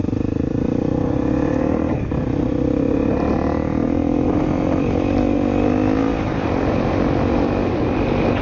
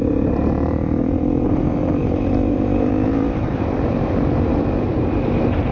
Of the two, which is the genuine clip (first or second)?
first